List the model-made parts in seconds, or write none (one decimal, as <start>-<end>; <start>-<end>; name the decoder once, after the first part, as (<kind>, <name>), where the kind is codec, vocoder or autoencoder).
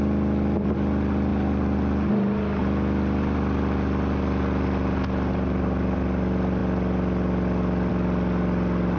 none